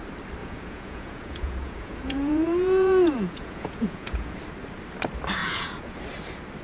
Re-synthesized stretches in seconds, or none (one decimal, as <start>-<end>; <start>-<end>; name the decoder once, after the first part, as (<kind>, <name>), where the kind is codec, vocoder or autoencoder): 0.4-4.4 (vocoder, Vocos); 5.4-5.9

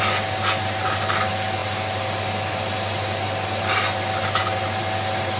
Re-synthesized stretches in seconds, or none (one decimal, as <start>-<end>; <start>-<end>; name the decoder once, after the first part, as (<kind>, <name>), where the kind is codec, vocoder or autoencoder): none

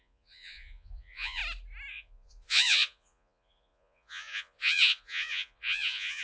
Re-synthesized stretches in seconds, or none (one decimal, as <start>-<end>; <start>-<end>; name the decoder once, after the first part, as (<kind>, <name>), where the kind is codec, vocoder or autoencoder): 0.0-1.4 (vocoder, Vocos); 1.9-6.2

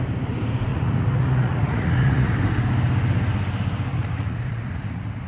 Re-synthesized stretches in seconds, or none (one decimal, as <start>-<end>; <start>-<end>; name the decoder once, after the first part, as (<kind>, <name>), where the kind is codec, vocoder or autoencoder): 0.7-2.3 (vocoder, Vocos); 3.9-5.3

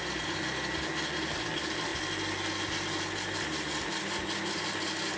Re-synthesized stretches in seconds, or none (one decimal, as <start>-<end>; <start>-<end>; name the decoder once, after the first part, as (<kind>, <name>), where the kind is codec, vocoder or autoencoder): none

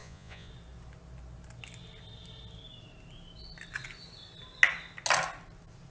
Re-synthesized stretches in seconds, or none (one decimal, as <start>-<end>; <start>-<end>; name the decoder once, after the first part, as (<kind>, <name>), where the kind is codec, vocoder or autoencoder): 0.0-0.5 (vocoder, Vocos)